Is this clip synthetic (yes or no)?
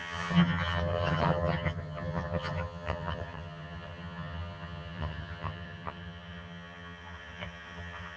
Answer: yes